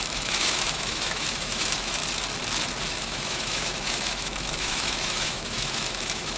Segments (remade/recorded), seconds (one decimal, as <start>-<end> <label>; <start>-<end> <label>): 0.0-2.0 remade; 2.0-3.0 recorded; 3.0-6.4 remade